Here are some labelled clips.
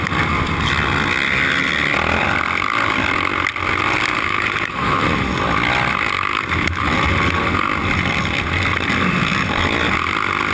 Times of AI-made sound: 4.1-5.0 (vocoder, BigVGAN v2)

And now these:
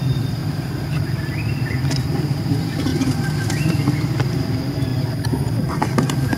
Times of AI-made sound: 0.0-0.4 (vocoder, BigVGAN v2); 2.0-2.9; 4.3-4.9; 5.6-6.4

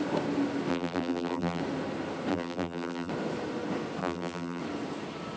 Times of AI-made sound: 0.7-1.6 (vocoder, BigVGAN v2); 2.3-3.1; 4.0-4.6